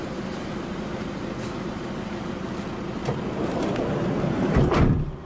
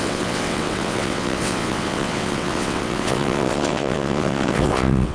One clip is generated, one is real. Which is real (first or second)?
first